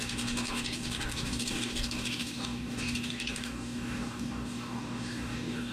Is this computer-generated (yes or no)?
yes